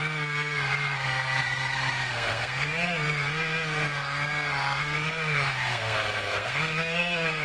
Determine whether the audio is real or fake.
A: fake